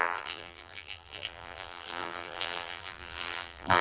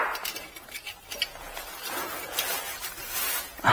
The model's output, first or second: first